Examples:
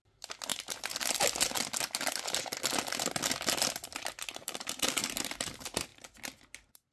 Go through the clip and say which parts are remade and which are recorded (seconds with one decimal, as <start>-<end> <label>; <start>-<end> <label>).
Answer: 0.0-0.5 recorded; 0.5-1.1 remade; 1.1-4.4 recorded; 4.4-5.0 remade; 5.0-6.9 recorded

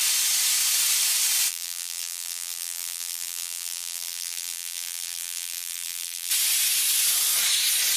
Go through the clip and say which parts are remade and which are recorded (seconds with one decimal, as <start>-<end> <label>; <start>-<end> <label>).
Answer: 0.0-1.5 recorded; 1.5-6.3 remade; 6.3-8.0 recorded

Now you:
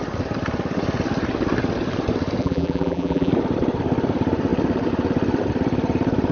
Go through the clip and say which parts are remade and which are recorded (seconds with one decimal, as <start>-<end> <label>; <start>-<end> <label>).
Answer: 0.0-2.4 recorded; 2.4-3.3 remade; 3.3-6.3 recorded